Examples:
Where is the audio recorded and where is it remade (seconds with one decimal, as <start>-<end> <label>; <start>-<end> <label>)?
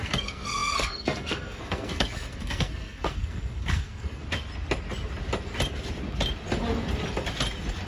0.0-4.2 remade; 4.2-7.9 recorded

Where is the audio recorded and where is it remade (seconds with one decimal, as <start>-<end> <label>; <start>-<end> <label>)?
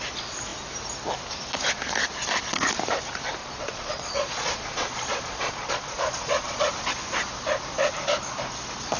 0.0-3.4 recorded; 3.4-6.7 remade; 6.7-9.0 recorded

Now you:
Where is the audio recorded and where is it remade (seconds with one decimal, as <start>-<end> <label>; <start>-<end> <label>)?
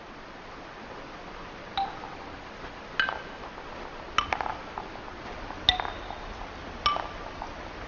0.0-7.9 recorded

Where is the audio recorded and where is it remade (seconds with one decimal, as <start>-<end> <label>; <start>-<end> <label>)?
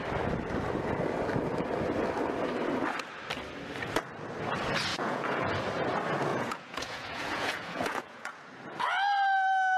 0.0-4.9 recorded; 4.9-5.5 remade; 5.5-6.3 recorded; 6.3-8.4 remade; 8.4-9.8 recorded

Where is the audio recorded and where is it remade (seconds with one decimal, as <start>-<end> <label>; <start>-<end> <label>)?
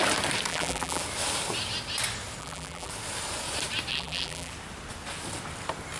0.0-0.5 recorded; 0.5-1.0 remade; 1.0-2.4 recorded; 2.4-2.9 remade; 2.9-3.9 recorded; 3.9-4.5 remade; 4.5-6.0 recorded